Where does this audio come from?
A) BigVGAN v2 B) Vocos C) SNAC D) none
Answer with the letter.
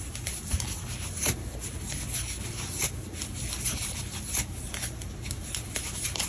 D